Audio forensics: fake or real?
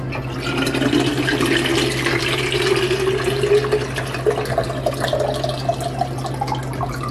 real